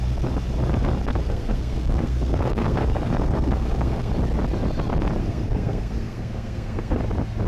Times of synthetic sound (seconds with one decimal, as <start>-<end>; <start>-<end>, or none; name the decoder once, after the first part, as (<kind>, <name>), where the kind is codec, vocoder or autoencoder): 1.1-4.1 (codec, SNAC); 5.2-7.0